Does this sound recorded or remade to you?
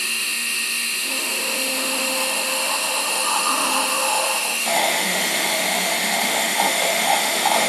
remade